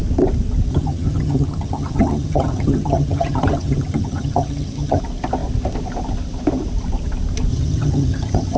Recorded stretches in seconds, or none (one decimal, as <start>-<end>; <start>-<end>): 0.0-0.7; 5.0-7.5